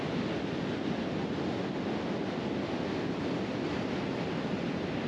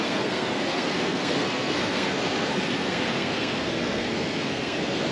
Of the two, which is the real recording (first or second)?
first